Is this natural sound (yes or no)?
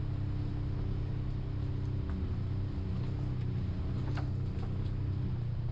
yes